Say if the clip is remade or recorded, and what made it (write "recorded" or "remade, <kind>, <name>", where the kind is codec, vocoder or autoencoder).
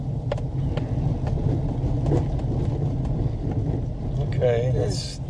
recorded